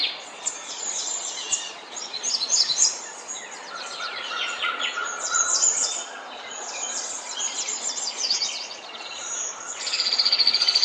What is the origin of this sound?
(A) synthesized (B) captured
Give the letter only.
A